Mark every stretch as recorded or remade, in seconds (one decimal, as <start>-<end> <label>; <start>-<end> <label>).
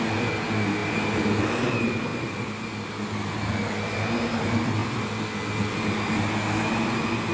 0.0-0.8 recorded; 0.8-1.4 remade; 1.4-2.1 recorded; 2.1-2.9 remade; 2.9-7.3 recorded